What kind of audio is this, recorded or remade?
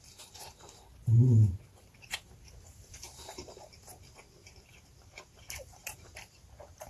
remade